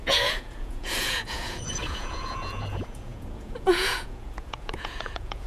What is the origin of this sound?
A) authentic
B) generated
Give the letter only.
B